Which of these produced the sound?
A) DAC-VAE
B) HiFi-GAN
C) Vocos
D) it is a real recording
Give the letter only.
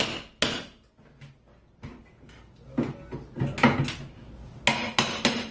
D